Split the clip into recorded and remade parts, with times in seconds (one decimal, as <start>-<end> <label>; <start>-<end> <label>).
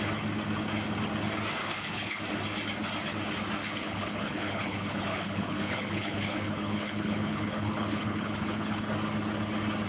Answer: 0.0-1.6 recorded; 1.6-2.2 remade; 2.2-3.6 recorded; 3.6-8.9 remade; 8.9-9.9 recorded